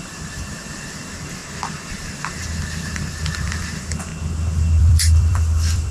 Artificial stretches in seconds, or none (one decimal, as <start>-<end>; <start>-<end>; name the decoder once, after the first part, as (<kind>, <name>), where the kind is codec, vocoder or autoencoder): 0.0-1.4 (vocoder, BigVGAN v2); 1.9-4.1; 4.8-5.9

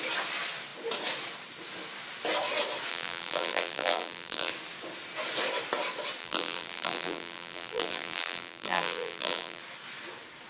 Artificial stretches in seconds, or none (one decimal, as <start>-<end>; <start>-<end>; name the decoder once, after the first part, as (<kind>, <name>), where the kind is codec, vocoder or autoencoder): 2.9-4.5 (vocoder, BigVGAN v2); 6.2-9.6

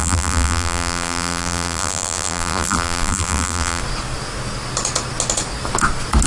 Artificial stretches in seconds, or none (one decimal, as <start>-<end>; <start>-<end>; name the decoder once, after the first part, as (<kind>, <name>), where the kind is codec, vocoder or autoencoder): 0.0-3.8 (vocoder, BigVGAN v2)

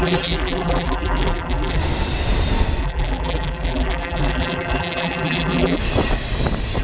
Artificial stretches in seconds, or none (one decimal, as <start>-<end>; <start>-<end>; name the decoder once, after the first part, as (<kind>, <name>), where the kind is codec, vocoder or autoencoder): 0.0-1.8 (vocoder, BigVGAN v2); 2.8-5.8

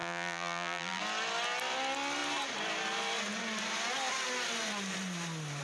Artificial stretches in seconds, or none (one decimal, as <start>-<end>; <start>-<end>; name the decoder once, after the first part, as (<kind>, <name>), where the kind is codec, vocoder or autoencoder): 0.0-1.0 (vocoder, BigVGAN v2)

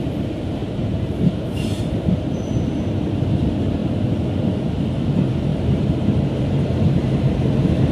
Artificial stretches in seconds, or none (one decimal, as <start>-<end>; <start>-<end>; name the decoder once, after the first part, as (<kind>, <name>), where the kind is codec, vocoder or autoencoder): 0.6-1.8 (vocoder, BigVGAN v2); 5.5-7.3